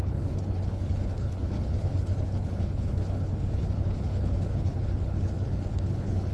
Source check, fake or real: fake